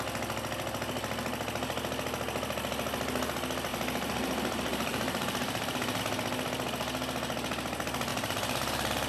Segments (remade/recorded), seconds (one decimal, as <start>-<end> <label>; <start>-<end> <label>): 0.0-3.7 recorded; 3.7-6.0 remade; 6.0-8.1 recorded; 8.1-9.1 remade